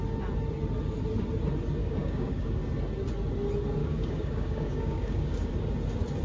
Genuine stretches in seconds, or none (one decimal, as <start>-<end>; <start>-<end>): 0.0-1.8; 2.6-3.8; 5.5-6.2